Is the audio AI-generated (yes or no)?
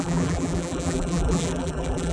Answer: yes